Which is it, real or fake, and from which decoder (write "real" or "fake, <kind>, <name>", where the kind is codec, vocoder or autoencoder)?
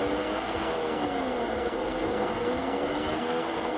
fake, codec, SNAC